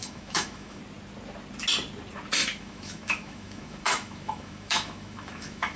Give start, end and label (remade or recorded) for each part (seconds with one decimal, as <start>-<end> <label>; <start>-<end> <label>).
0.0-0.8 remade; 0.8-2.4 recorded; 2.4-5.8 remade